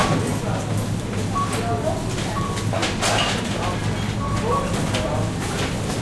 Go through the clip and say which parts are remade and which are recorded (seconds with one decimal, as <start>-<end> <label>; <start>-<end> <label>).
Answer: 0.0-6.0 recorded